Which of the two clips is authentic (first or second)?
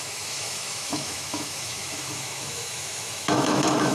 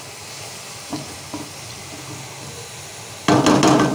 second